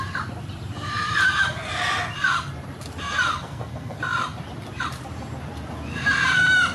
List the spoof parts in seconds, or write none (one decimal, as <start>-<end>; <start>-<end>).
3.3-4.0